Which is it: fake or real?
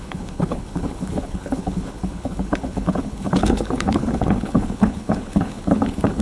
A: fake